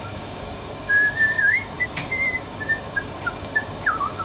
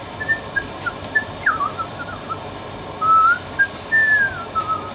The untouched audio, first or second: second